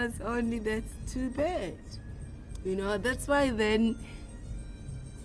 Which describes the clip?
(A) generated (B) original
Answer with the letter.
B